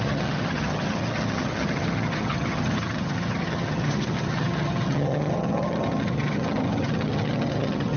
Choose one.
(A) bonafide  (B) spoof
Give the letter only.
B